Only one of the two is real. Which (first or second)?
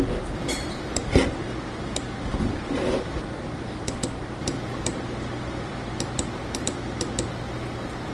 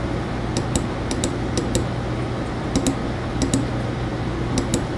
second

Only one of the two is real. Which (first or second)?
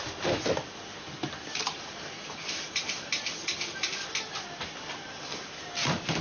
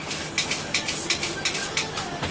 second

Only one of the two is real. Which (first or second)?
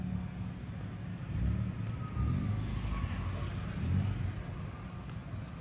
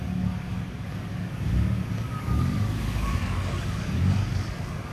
first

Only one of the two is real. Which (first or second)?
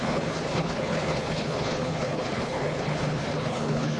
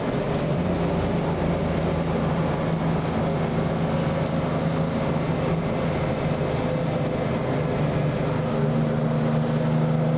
second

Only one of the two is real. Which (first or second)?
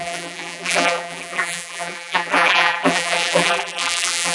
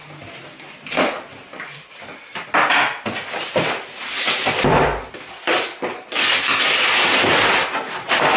second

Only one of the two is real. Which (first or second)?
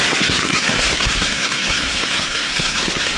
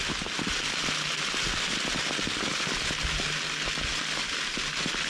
second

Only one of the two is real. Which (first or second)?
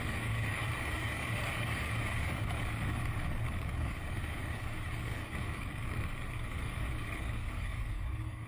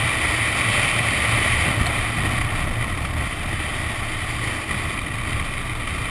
second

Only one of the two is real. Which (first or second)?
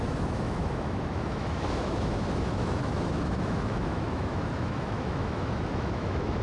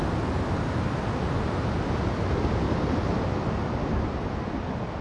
second